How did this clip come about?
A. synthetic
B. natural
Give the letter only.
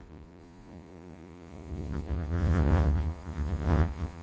A